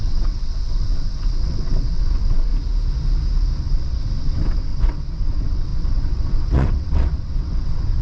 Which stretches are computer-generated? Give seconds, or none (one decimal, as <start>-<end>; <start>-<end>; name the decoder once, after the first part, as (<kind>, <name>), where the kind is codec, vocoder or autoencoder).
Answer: 0.0-2.5 (vocoder, WaveNeXt); 3.6-8.0